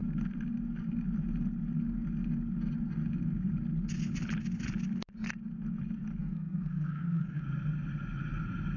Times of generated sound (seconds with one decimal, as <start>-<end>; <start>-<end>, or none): 6.2-7.4